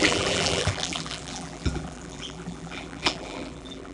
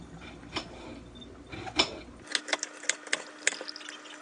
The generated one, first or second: first